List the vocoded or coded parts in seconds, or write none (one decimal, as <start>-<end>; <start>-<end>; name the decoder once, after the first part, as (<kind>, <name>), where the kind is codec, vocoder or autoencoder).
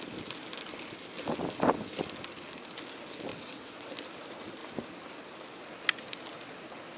3.3-3.9 (vocoder, WaveNeXt)